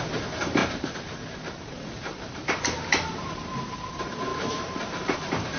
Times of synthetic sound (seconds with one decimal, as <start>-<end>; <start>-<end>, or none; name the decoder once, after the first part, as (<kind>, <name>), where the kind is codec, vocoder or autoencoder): 0.0-5.6 (vocoder, BigVGAN v2)